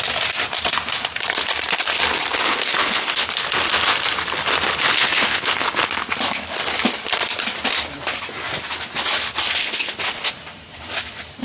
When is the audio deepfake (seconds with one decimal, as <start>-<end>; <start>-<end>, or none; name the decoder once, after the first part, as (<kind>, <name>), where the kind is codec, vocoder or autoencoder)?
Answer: 2.4-3.3 (codec, HILCodec); 4.9-5.7; 9.6-10.3